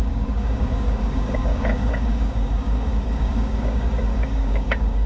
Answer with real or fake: fake